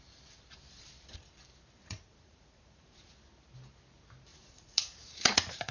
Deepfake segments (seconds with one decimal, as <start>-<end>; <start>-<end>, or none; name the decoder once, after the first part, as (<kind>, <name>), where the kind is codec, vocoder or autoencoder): 1.8-3.1 (vocoder, Vocos); 4.3-5.7